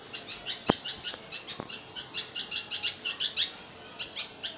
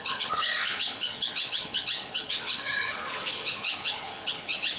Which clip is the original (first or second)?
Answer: first